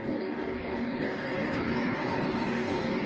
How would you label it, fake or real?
fake